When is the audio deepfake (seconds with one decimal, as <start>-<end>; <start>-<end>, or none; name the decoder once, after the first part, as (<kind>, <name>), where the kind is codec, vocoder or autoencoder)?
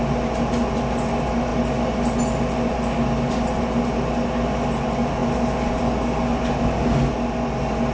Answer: none